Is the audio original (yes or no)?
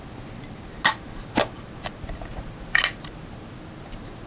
yes